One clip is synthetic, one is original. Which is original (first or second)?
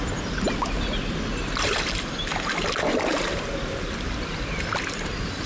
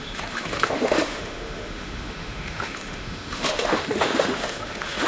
first